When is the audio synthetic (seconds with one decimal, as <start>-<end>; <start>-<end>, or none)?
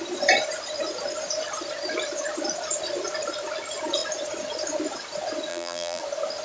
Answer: 5.5-6.0